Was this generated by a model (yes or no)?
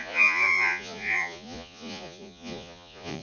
yes